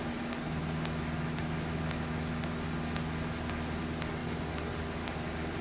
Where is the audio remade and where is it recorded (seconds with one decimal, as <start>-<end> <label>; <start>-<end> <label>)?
0.0-4.2 recorded; 4.2-4.7 remade; 4.7-5.6 recorded